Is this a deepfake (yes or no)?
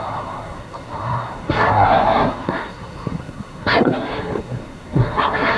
yes